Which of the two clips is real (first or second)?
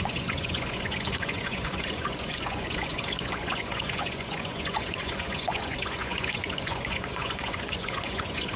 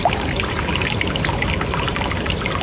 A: second